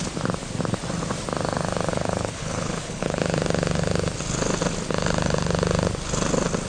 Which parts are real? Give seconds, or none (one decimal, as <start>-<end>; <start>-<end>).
0.0-1.9; 3.2-6.7